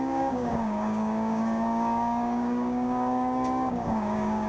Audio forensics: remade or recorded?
remade